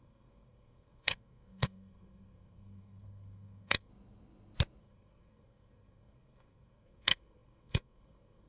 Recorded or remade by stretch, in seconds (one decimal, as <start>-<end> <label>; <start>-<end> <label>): 0.0-3.9 remade; 3.9-4.8 recorded; 4.8-8.5 remade